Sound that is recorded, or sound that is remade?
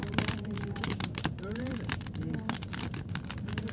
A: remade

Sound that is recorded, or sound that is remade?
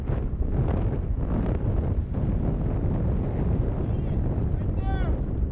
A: recorded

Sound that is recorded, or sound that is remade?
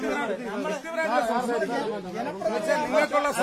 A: recorded